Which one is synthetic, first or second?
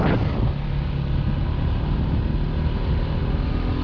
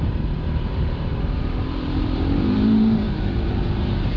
second